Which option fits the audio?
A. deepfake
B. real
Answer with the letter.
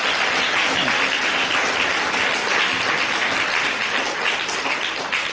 B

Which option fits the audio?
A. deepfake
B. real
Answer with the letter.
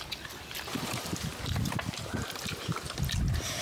B